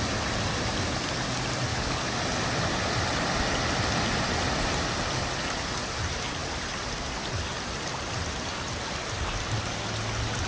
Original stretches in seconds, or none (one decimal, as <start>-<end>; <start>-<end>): 0.0-1.7; 2.2-10.5